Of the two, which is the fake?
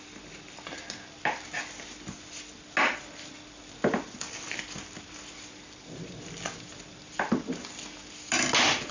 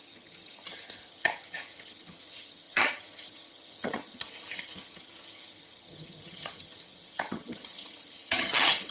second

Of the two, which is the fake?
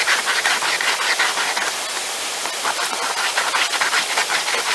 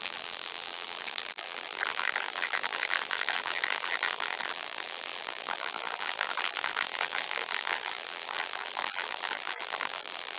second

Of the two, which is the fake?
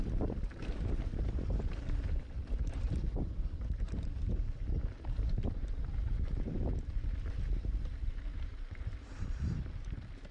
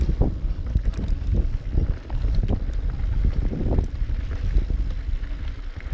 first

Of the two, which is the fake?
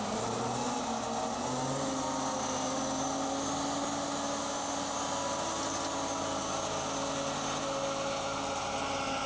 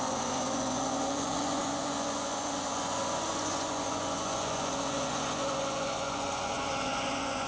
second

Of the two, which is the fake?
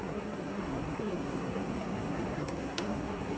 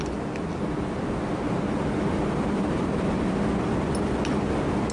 first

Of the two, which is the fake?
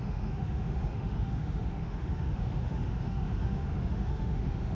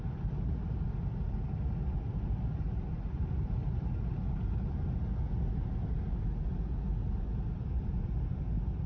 first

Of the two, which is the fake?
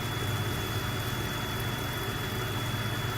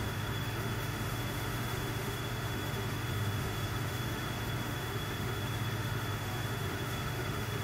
second